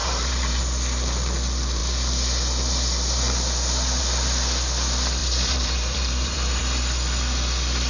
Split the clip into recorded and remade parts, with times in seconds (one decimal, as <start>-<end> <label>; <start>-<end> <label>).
0.0-0.6 remade; 0.6-5.2 recorded; 5.2-6.6 remade; 6.6-7.9 recorded